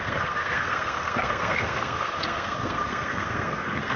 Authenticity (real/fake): fake